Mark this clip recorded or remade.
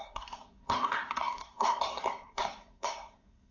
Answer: remade